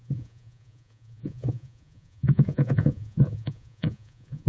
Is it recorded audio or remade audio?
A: remade